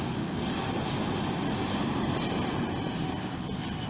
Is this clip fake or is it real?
real